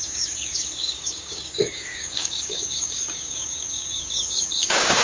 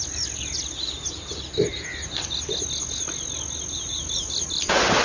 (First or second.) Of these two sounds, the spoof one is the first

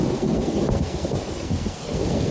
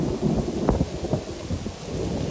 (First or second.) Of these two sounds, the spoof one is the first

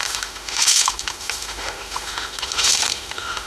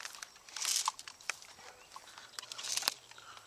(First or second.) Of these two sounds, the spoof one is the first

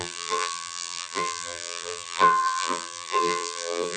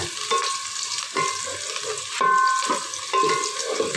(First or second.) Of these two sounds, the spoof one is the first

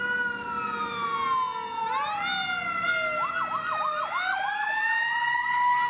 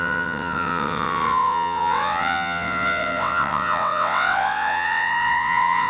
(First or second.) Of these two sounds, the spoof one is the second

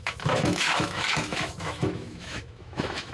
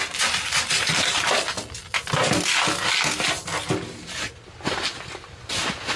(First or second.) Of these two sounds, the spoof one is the first